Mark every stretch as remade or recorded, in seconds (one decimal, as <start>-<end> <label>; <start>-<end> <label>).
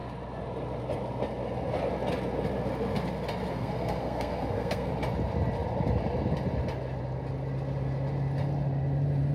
0.0-3.5 recorded; 3.5-4.9 remade; 4.9-9.3 recorded